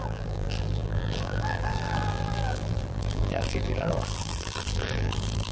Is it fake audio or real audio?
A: fake